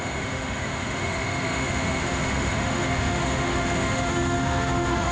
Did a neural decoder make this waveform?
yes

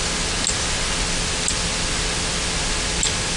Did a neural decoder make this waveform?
no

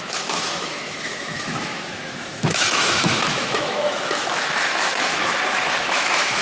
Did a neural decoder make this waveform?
yes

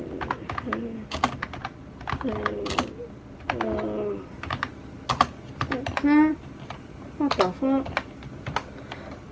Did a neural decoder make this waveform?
no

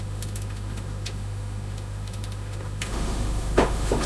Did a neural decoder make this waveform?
yes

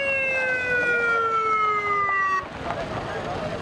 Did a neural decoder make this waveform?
no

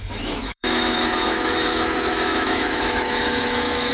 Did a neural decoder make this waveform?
yes